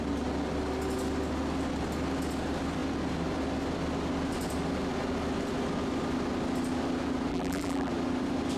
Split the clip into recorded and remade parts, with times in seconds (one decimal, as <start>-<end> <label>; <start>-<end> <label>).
0.0-7.3 recorded; 7.3-7.9 remade; 7.9-8.6 recorded